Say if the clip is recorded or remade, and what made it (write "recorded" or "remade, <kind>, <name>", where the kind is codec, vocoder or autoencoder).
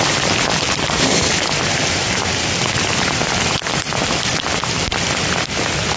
recorded